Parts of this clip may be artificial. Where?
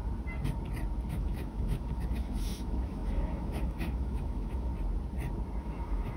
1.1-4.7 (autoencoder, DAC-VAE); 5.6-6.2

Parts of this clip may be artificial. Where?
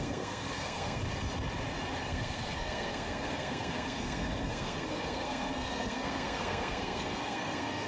0.0-1.0 (codec, SNAC); 2.0-7.9